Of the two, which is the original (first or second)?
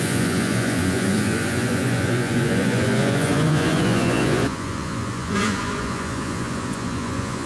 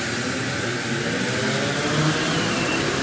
second